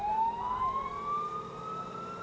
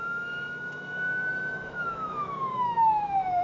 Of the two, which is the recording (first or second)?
first